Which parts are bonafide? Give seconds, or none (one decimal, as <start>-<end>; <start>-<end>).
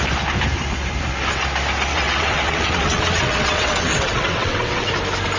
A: 0.0-1.9; 4.9-5.4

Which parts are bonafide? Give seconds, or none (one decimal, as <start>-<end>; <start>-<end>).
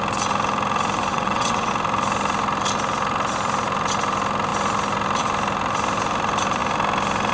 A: 0.0-1.1; 1.7-7.3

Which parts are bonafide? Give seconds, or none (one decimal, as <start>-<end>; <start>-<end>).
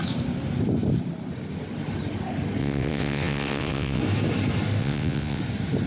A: 0.0-2.6; 4.0-4.8; 5.4-5.9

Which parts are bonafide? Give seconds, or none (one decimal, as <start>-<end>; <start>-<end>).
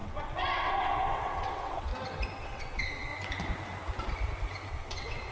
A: 1.9-2.4; 3.1-4.7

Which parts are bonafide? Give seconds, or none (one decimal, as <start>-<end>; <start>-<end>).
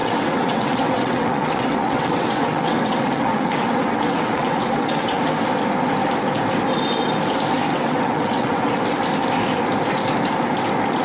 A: 5.2-7.7; 8.7-11.0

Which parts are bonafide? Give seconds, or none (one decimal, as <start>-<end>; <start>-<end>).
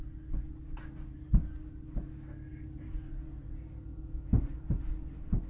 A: 0.0-5.5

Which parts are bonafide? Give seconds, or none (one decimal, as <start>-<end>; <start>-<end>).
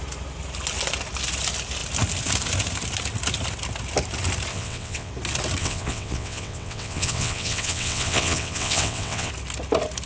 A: 0.0-4.5; 5.1-5.6; 9.3-10.1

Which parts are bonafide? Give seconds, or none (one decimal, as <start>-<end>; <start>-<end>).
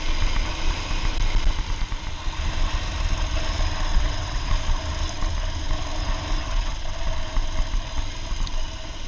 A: 0.0-3.9; 4.5-6.4; 7.0-9.1